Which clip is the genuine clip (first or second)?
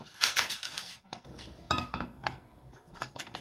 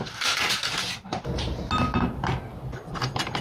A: second